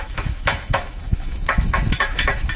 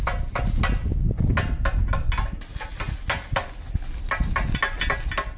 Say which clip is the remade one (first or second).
first